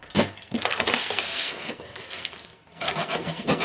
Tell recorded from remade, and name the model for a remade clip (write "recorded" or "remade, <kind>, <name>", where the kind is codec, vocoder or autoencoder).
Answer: remade, codec, SNAC